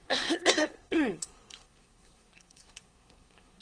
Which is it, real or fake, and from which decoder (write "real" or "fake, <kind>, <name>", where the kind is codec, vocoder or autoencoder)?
fake, codec, SNAC